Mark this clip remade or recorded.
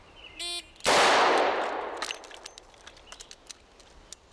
recorded